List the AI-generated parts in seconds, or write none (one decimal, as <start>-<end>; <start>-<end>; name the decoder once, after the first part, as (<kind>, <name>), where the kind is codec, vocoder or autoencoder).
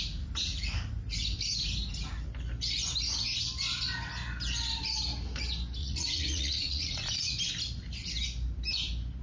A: 5.8-7.3 (vocoder, Vocos)